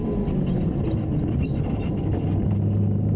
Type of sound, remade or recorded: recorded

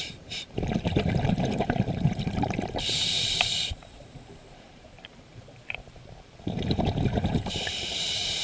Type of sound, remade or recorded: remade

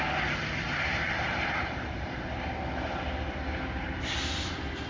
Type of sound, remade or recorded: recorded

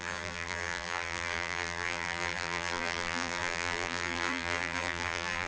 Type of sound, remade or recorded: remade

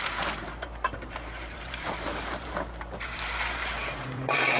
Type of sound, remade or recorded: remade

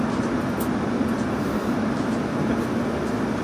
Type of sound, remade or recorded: recorded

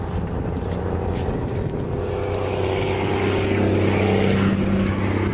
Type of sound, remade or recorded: recorded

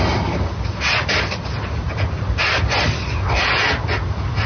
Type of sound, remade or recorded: recorded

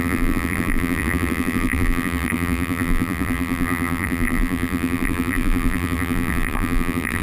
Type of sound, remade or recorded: remade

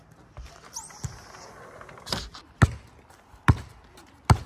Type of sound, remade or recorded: recorded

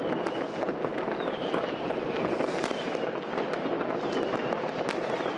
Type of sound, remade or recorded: recorded